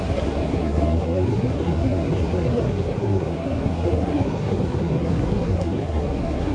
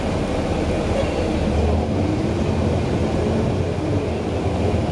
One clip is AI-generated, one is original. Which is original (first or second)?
second